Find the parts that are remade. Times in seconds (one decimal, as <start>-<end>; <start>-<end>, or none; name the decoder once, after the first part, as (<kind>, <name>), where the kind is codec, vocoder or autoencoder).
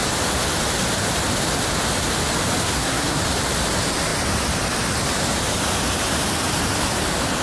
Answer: 2.6-3.2 (codec, SNAC)